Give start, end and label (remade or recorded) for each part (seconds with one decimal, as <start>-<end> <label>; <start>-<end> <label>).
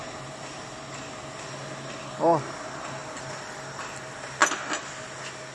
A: 0.0-3.0 recorded; 3.0-3.8 remade; 3.8-5.5 recorded